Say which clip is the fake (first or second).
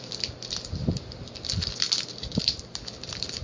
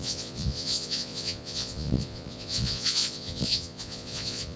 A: second